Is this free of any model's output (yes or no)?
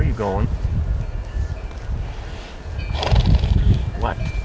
yes